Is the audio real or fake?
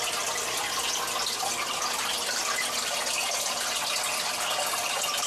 real